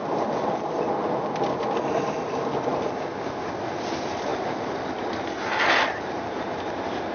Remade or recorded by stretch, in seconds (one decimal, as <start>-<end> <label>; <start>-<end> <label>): 0.0-7.1 recorded